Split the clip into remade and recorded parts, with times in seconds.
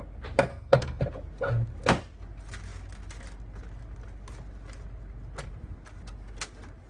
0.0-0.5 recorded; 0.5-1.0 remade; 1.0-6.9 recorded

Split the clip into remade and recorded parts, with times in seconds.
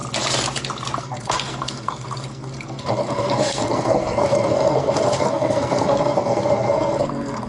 0.0-1.0 recorded; 1.0-7.5 remade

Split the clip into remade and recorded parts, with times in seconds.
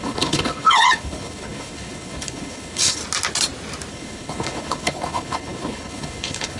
0.0-3.0 remade; 3.0-3.9 recorded; 3.9-6.6 remade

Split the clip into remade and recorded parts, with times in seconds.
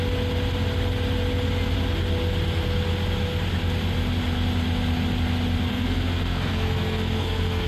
0.0-5.7 recorded; 5.7-7.7 remade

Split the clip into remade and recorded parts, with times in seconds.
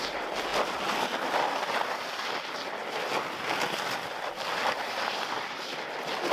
0.0-0.5 remade; 0.5-4.3 recorded; 4.3-6.3 remade